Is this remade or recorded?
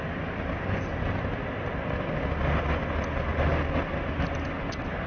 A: recorded